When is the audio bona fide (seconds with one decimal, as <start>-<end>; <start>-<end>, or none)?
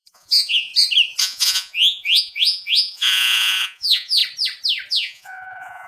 0.7-1.2; 4.2-4.9